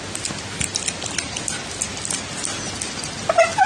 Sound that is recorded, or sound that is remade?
recorded